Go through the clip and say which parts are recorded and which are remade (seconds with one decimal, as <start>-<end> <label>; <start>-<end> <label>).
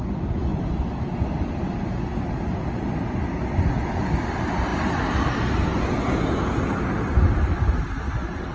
0.0-8.5 recorded